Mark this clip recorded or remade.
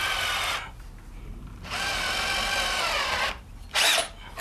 recorded